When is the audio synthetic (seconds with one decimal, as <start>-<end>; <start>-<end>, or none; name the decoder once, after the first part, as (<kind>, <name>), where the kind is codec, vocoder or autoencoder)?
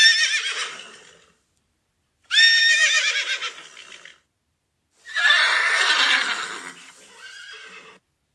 2.6-3.1 (autoencoder, DAC-VAE)